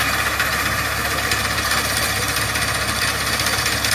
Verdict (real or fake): real